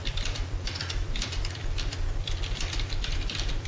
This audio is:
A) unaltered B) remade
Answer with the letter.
A